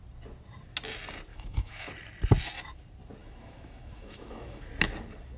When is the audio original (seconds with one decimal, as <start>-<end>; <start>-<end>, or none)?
0.0-1.3; 1.9-3.2; 4.6-5.4